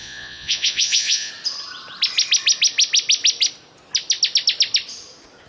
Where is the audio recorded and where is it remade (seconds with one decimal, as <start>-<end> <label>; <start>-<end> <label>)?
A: 0.0-1.3 remade; 1.3-5.5 recorded